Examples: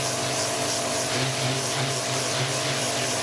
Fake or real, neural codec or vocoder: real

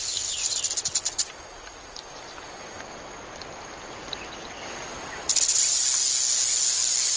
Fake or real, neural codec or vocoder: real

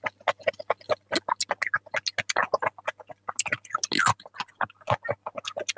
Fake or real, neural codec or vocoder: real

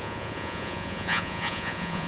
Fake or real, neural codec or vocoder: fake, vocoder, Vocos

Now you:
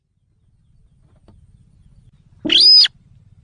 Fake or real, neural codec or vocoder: real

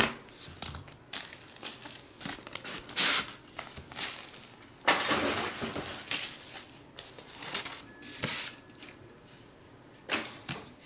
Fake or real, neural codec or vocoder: real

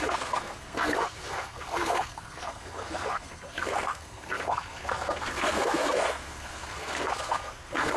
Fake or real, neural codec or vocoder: fake, codec, SNAC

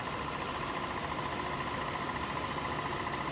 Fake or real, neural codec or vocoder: real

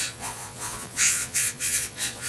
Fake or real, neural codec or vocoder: fake, vocoder, Vocos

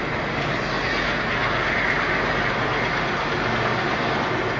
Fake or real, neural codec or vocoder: real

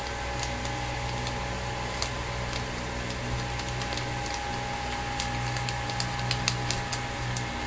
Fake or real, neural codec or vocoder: real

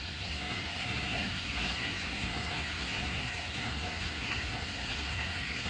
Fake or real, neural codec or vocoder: fake, codec, SNAC